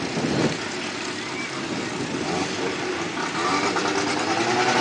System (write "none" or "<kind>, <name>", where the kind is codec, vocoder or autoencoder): none